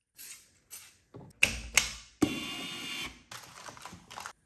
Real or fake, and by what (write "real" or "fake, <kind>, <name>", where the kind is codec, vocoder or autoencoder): real